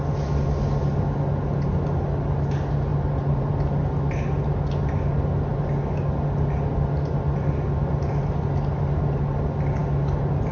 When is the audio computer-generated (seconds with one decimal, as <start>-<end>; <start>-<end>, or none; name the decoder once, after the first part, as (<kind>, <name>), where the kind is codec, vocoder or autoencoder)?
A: none